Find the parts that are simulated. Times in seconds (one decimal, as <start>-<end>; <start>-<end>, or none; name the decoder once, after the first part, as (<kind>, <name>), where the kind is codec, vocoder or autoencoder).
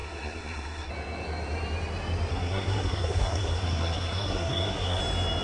0.0-0.9 (codec, SNAC); 2.3-5.0